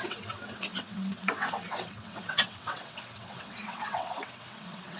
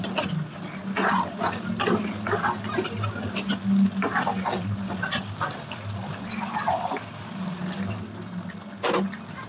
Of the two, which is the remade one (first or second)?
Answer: first